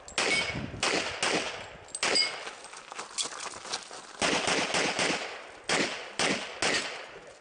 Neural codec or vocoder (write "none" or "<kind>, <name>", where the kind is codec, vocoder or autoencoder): none